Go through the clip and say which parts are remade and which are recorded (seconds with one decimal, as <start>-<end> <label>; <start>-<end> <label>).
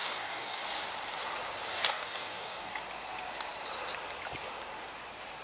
0.0-0.6 remade; 0.6-1.7 recorded; 1.7-2.7 remade; 2.7-5.4 recorded